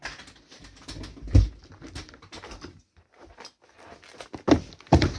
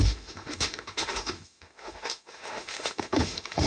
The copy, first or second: second